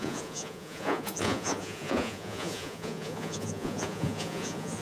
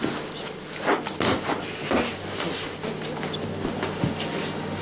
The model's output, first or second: first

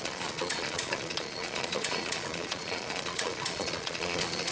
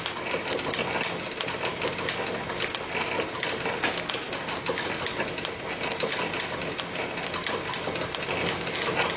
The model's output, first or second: first